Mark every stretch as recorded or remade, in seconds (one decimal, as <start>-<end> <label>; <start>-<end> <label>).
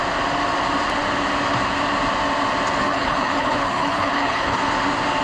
0.0-2.8 recorded; 2.8-4.6 remade; 4.6-5.2 recorded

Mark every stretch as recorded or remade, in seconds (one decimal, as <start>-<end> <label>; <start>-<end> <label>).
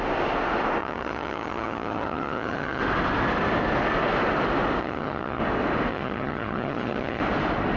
0.0-0.8 recorded; 0.8-2.8 remade; 2.8-4.8 recorded; 4.8-5.4 remade; 5.4-5.9 recorded; 5.9-7.2 remade; 7.2-7.8 recorded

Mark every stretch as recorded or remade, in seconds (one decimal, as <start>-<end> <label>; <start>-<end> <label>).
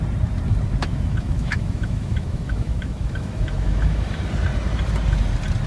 0.0-0.8 recorded; 0.8-4.2 remade; 4.2-5.7 recorded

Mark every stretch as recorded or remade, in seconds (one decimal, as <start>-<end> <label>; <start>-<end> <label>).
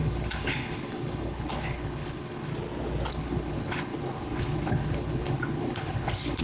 0.0-2.5 remade; 2.5-3.1 recorded; 3.1-6.4 remade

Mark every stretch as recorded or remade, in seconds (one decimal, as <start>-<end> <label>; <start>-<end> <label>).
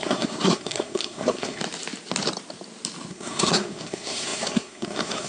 0.0-1.6 remade; 1.6-3.1 recorded; 3.1-5.3 remade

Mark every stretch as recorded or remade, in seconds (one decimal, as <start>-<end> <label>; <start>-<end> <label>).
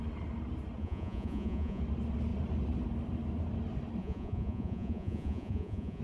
0.0-0.8 recorded; 0.8-1.8 remade; 1.8-4.0 recorded; 4.0-6.0 remade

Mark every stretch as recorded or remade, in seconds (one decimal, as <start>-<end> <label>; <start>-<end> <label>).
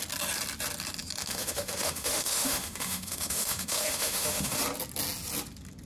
0.0-1.2 recorded; 1.2-4.6 remade; 4.6-5.9 recorded